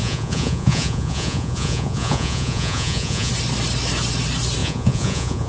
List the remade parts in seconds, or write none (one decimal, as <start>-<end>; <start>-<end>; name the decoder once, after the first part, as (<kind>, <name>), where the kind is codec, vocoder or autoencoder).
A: 0.0-3.3 (vocoder, Vocos); 4.6-5.5